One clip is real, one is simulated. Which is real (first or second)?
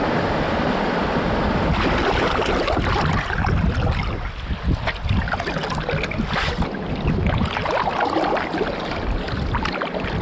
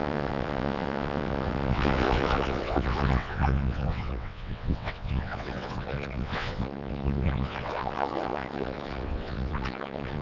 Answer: first